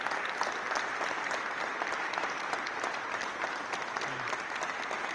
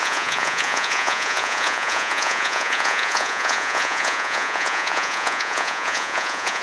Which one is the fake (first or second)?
second